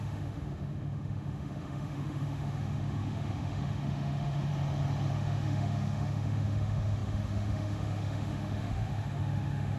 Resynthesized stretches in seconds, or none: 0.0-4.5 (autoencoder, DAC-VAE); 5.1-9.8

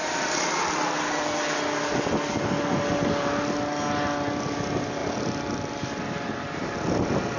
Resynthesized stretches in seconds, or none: 0.0-0.6 (vocoder, BigVGAN v2)

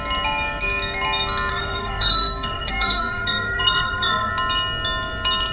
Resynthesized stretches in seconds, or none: 1.5-4.3 (codec, SNAC)

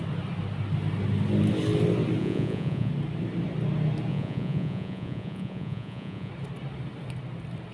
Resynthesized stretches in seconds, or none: 2.2-2.9 (vocoder, Vocos); 4.1-6.3

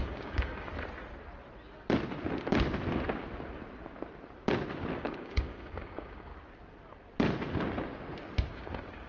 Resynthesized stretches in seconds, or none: 0.0-0.7 (codec, DAC); 5.0-6.3; 8.5-9.1